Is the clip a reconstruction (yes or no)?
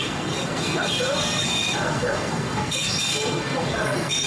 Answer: yes